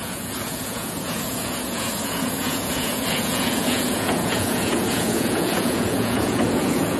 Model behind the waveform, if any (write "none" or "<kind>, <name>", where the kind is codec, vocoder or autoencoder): vocoder, Vocos